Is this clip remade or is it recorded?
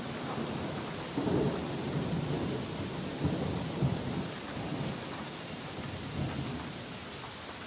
recorded